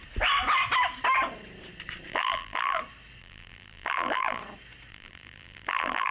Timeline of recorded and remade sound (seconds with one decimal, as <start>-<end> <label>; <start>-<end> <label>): 0.0-2.1 recorded; 2.1-2.8 remade; 2.8-3.2 recorded; 3.2-4.4 remade; 4.4-4.9 recorded; 4.9-6.1 remade